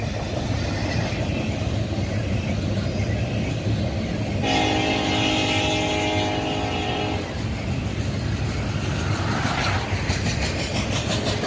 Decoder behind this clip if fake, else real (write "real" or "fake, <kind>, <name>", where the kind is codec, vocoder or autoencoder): real